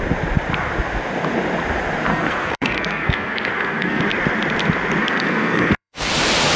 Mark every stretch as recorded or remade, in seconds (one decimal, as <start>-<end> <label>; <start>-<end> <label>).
0.0-2.1 recorded; 2.1-4.0 remade; 4.0-5.0 recorded; 5.0-6.1 remade; 6.1-6.6 recorded